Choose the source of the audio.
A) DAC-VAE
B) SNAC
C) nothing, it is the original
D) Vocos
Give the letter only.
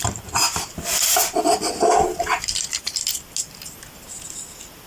C